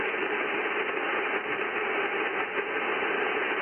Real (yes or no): yes